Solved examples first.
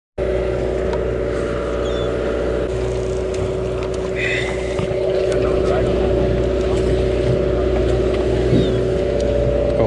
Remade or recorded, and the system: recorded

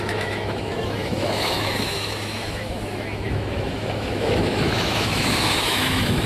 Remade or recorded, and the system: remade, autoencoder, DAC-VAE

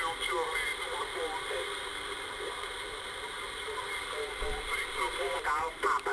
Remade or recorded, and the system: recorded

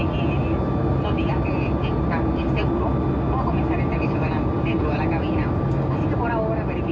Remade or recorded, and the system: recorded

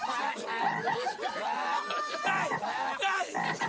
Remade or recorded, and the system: recorded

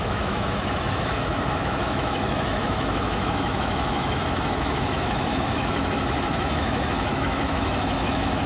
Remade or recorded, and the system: remade, autoencoder, DAC-VAE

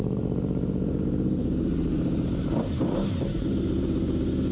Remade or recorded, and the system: remade, vocoder, BigVGAN v2